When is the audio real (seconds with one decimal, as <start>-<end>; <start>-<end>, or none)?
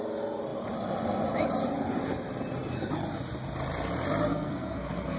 0.0-4.3